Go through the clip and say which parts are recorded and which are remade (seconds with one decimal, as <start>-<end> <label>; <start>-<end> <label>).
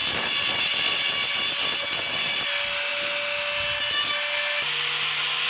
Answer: 0.0-5.5 recorded